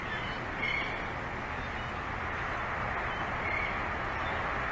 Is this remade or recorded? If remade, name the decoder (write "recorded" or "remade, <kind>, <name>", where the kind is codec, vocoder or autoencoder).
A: recorded